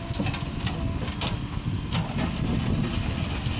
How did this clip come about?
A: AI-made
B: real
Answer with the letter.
B